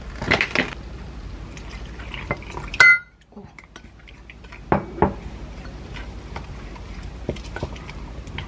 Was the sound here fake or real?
real